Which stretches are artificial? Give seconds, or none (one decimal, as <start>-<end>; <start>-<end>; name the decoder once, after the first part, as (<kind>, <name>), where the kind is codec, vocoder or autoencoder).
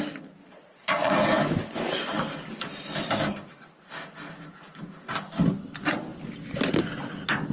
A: 0.4-1.1 (vocoder, Vocos)